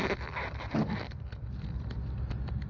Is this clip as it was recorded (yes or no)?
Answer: yes